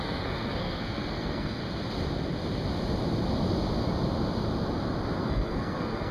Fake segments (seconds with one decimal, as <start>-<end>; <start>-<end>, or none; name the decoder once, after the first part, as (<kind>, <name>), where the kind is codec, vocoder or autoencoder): 0.0-1.6 (codec, SNAC); 5.2-6.1